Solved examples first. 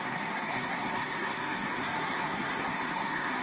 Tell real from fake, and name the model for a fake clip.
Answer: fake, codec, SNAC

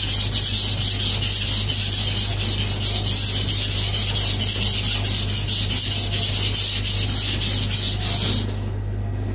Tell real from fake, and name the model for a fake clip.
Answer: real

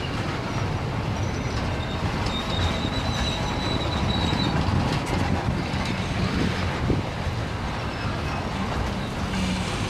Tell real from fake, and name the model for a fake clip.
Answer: real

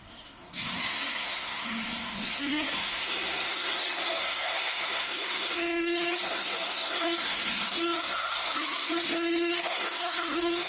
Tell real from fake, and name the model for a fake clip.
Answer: fake, codec, SNAC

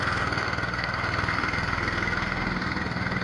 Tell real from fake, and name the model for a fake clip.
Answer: fake, codec, SNAC